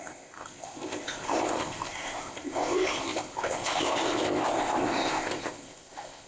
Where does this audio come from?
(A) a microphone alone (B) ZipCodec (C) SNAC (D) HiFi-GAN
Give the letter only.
B